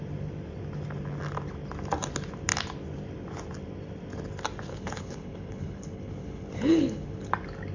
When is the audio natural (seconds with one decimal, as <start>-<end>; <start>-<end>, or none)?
0.0-4.7; 7.3-7.7